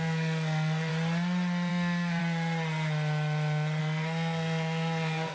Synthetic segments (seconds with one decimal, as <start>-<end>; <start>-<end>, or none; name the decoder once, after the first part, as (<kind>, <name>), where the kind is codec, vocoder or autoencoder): 0.0-0.9 (codec, SNAC); 1.7-2.2; 3.8-5.3